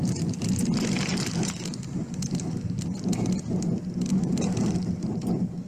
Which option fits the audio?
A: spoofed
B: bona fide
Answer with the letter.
B